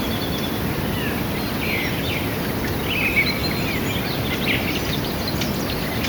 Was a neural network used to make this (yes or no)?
no